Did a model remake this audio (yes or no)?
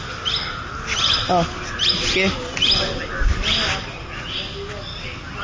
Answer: no